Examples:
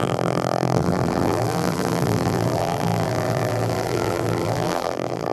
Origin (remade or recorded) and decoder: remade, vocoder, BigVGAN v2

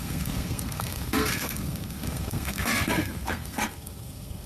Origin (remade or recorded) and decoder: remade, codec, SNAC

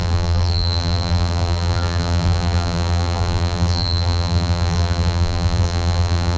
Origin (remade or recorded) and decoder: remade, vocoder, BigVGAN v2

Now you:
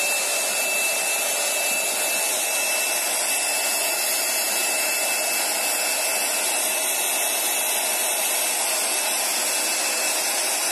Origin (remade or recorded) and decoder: recorded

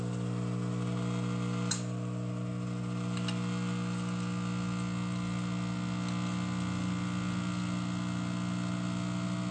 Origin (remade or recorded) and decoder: recorded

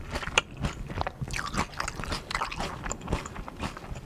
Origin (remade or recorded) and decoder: recorded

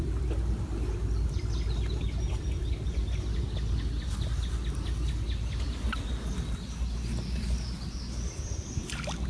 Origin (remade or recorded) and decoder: recorded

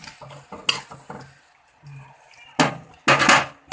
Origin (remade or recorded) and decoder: recorded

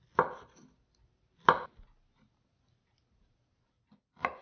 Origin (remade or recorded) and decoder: recorded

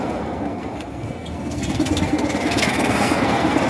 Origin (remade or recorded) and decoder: remade, codec, SNAC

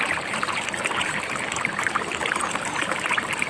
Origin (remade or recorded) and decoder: remade, vocoder, BigVGAN v2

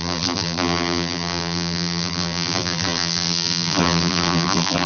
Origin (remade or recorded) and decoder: remade, vocoder, BigVGAN v2